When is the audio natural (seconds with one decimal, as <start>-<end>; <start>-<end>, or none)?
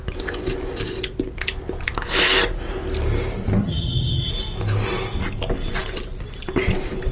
0.0-3.6; 4.3-7.1